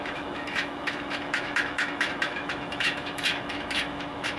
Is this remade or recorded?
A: remade